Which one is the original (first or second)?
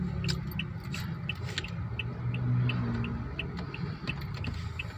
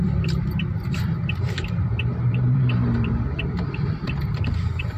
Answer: first